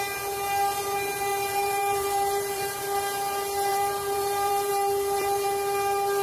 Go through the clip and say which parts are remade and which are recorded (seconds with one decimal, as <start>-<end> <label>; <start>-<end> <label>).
0.0-1.3 recorded; 1.3-2.8 remade; 2.8-3.7 recorded; 3.7-4.7 remade; 4.7-6.2 recorded